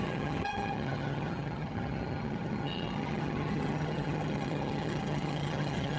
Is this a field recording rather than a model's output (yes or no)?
no